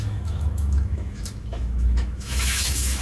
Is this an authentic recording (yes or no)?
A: no